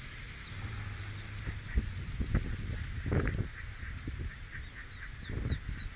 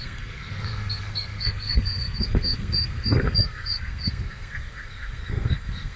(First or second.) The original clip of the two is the first